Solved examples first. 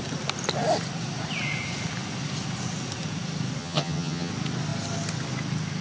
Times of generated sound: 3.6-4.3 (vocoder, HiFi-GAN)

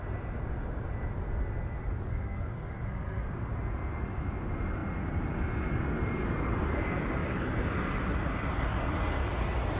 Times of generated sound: 2.0-3.3 (codec, SNAC)

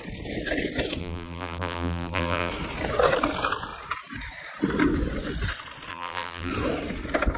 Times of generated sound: 1.0-2.5 (vocoder, BigVGAN v2); 5.9-6.5